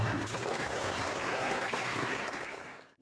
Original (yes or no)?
no